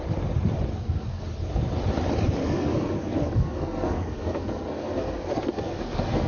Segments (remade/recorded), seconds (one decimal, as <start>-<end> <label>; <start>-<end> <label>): 0.0-0.7 recorded; 0.7-1.2 remade; 1.2-2.4 recorded; 2.4-6.3 remade